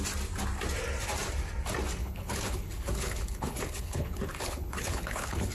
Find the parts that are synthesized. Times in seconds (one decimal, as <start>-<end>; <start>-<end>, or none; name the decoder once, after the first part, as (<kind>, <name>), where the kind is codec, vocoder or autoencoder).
2.0-5.5 (codec, HILCodec)